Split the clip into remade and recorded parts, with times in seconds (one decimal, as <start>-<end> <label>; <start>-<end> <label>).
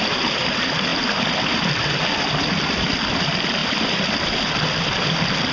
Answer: 0.0-5.5 recorded